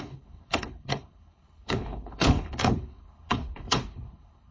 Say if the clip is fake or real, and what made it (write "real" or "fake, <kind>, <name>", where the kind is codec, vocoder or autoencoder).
fake, codec, HILCodec